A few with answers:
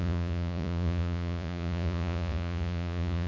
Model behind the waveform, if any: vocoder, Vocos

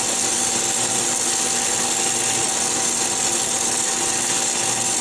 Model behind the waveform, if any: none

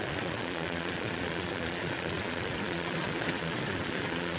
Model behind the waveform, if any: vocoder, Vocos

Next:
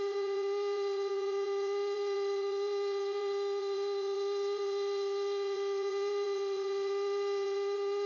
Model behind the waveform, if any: vocoder, Vocos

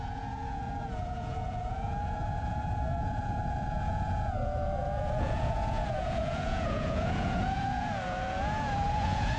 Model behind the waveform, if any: vocoder, Vocos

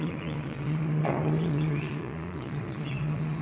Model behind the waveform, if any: vocoder, Vocos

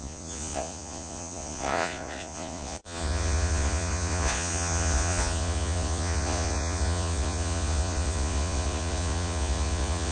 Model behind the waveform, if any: vocoder, Vocos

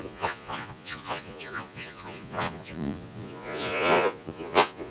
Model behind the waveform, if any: vocoder, Vocos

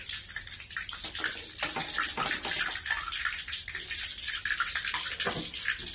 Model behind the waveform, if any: none